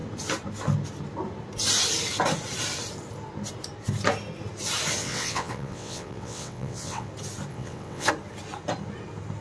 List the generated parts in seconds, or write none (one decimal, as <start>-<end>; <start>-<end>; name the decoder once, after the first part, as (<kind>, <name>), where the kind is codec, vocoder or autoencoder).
5.0-7.1 (vocoder, WaveNeXt); 7.5-8.1